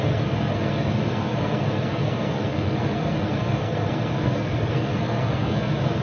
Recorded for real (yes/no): no